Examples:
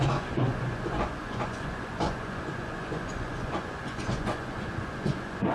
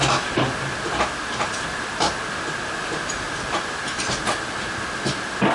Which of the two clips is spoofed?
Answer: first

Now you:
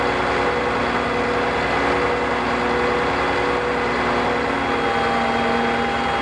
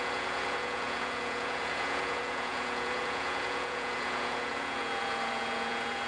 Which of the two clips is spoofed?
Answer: second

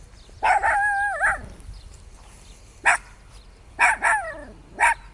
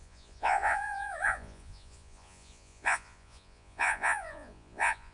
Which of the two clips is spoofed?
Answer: second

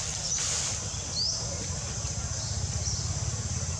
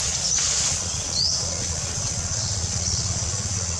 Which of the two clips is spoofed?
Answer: second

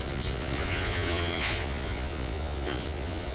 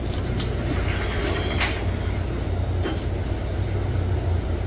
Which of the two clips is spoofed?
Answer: first